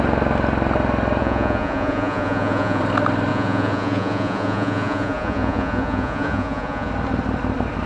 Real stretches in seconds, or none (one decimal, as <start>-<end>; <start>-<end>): 0.0-1.2; 2.8-3.3; 6.9-7.9